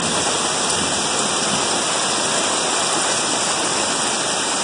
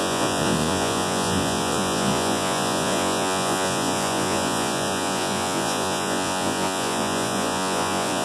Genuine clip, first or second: first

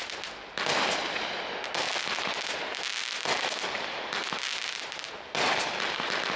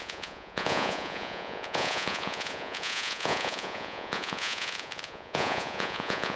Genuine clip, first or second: first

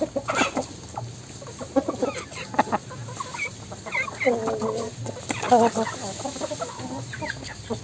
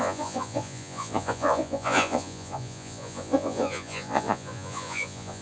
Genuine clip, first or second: first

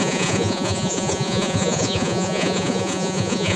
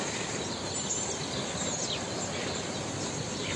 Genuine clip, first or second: second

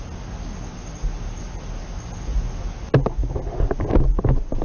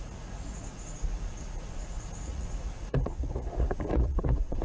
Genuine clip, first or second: first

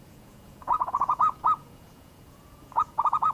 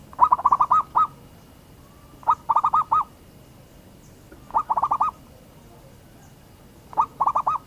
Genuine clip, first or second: second